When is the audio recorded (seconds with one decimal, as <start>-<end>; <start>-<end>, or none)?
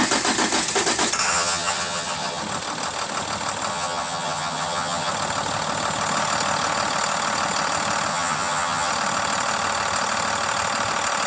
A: 0.0-1.2; 2.4-3.7; 5.1-8.1; 8.9-11.3